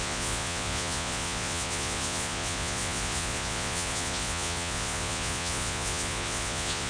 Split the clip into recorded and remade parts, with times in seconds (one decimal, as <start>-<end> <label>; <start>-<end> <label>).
0.0-6.9 remade